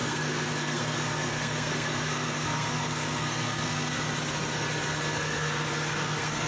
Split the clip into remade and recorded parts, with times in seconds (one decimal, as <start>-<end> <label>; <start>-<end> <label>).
0.0-3.9 remade; 3.9-5.2 recorded; 5.2-6.5 remade